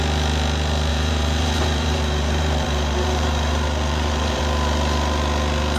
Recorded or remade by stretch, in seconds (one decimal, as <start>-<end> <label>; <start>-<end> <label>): 0.0-0.9 recorded; 0.9-4.4 remade; 4.4-5.8 recorded